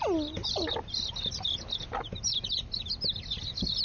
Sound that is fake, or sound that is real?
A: real